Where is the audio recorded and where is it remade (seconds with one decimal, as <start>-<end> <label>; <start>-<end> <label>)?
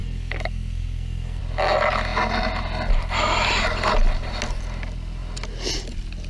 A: 0.0-1.4 remade; 1.4-6.3 recorded